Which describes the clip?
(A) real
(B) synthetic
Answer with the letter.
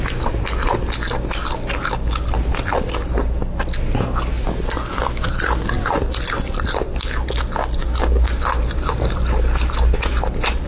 A